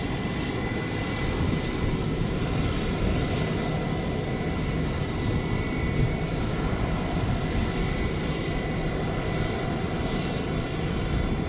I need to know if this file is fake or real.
real